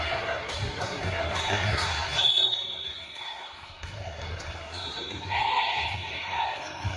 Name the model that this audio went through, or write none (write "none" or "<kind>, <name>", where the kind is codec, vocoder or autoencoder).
codec, SNAC